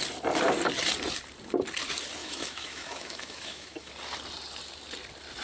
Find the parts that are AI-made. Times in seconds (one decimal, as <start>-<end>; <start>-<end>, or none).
2.2-3.9

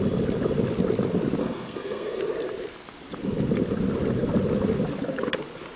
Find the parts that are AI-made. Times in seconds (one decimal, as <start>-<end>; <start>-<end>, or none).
1.4-2.2

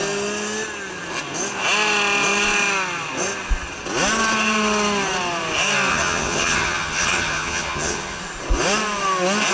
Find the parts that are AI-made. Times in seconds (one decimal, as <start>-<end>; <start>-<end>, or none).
5.9-8.2

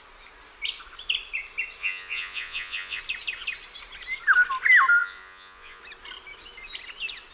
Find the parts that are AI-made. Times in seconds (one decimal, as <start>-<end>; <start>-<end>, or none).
1.8-3.0; 5.0-5.8

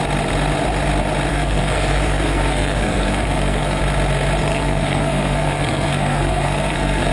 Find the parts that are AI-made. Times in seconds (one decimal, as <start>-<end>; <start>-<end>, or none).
1.3-3.8; 4.5-7.1

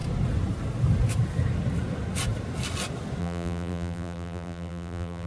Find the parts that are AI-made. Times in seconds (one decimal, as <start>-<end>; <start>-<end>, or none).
3.2-5.3

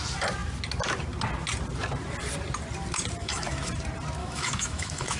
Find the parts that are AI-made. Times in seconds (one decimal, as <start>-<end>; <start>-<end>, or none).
3.2-3.7; 4.2-5.2

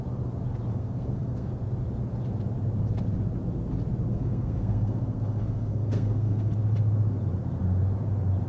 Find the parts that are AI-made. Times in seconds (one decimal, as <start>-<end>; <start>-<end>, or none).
0.7-1.5; 4.1-6.5